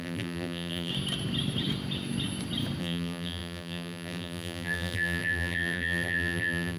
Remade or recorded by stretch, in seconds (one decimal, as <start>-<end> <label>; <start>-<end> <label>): 0.0-0.9 remade; 0.9-2.8 recorded; 2.8-6.8 remade